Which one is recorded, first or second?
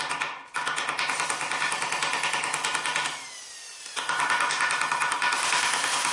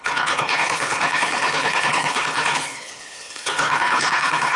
first